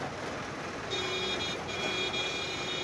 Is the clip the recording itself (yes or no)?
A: yes